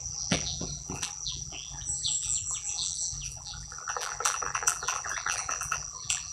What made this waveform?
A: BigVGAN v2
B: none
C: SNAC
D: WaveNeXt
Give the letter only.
A